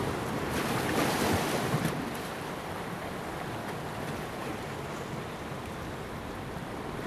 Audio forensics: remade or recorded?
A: recorded